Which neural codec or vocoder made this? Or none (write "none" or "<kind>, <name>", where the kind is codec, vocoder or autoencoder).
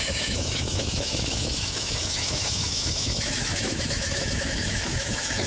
autoencoder, DAC-VAE